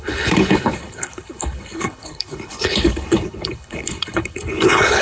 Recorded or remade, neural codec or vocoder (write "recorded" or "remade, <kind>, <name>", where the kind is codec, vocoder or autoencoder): remade, codec, HILCodec